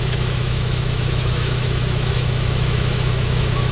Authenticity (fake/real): fake